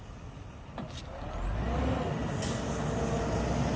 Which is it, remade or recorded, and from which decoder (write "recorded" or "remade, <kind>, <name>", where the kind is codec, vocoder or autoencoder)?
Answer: recorded